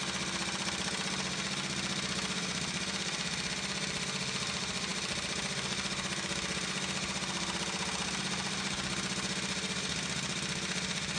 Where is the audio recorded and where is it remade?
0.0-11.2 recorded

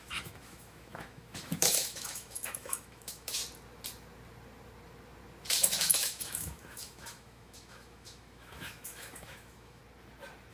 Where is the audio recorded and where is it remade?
0.0-3.4 remade; 3.4-5.5 recorded; 5.5-9.8 remade; 9.8-10.5 recorded